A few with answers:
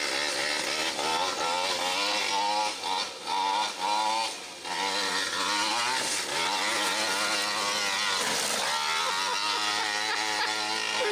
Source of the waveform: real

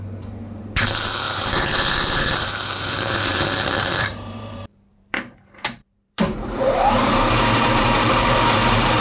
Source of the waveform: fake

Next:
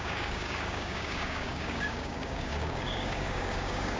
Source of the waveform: fake